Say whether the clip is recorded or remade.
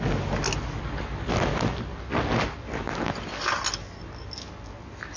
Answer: recorded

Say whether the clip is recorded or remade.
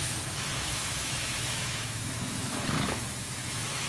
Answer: remade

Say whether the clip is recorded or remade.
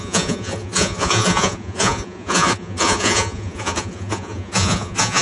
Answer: remade